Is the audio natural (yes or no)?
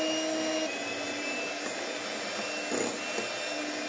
yes